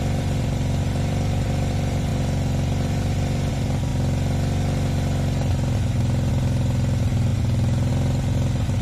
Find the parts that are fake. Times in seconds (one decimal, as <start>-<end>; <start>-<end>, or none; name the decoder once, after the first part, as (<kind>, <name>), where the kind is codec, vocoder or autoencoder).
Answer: 0.0-3.9 (vocoder, BigVGAN v2); 6.3-8.8